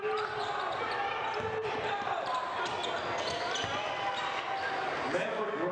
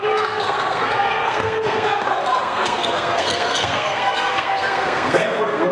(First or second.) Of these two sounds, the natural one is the first